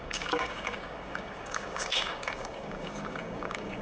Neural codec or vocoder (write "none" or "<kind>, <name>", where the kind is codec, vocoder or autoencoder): codec, DAC